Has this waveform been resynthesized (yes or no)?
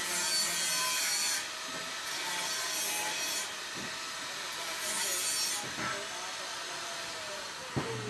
no